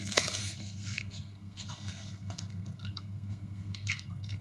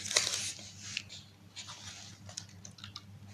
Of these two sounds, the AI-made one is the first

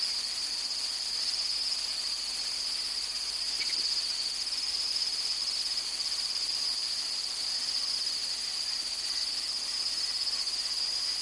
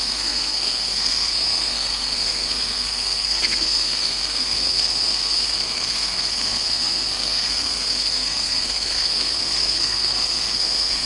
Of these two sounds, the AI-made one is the second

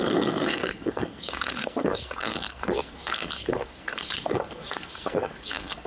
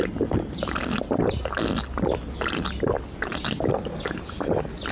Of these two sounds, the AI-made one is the first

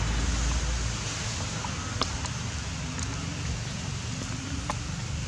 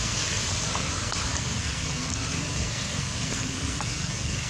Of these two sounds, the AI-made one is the second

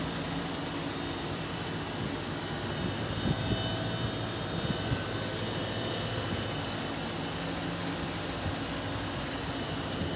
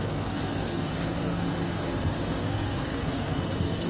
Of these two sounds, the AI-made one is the second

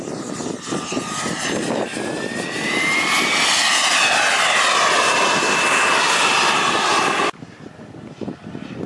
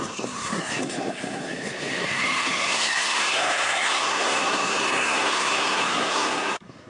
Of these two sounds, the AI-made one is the second